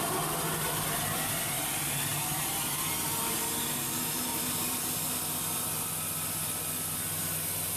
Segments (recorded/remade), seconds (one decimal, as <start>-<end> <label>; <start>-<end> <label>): 0.0-4.3 recorded; 4.3-4.8 remade; 4.8-7.8 recorded